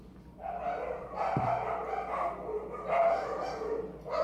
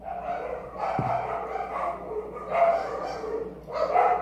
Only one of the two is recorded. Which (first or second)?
first